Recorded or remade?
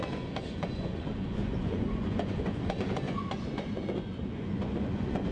remade